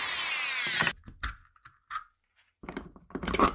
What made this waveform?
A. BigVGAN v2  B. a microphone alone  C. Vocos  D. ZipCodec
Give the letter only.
B